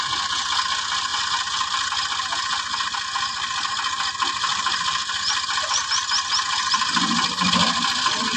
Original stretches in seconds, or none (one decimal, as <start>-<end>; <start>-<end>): 0.0-1.1; 1.9-4.5; 7.0-8.4